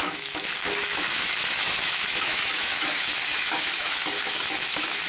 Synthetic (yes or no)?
yes